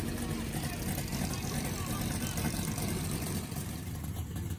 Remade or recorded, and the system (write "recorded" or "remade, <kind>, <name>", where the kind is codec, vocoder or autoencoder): recorded